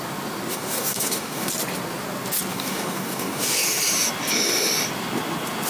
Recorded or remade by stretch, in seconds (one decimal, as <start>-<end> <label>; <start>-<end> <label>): 0.0-0.5 recorded; 0.5-1.5 remade; 1.5-2.5 recorded; 2.5-3.8 remade; 3.8-5.7 recorded